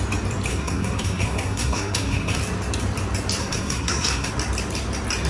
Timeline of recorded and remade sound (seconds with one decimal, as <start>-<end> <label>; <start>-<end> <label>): 0.0-0.5 recorded; 0.5-2.4 remade; 2.4-3.4 recorded; 3.4-4.3 remade; 4.3-5.3 recorded

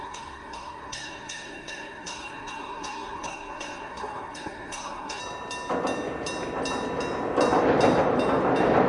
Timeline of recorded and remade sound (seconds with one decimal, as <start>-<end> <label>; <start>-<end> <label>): 0.0-5.2 remade; 5.2-8.9 recorded